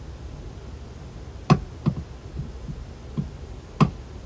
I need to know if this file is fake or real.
real